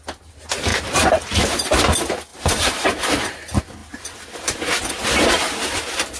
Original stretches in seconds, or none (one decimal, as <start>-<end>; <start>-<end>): 0.0-2.3; 3.1-6.2